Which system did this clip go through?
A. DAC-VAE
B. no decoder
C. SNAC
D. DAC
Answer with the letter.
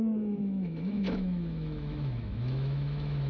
A